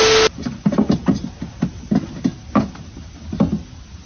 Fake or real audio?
real